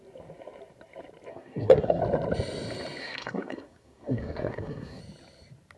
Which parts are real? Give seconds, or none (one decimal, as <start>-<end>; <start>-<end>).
0.0-1.3; 2.0-3.0; 5.0-5.8